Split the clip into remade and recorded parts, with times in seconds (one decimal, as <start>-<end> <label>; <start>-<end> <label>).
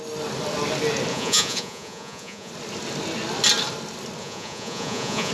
0.0-1.1 recorded; 1.1-2.5 remade; 2.5-4.2 recorded; 4.2-5.3 remade